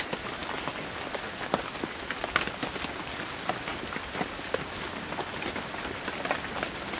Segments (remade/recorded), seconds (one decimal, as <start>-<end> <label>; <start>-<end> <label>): 0.0-7.0 recorded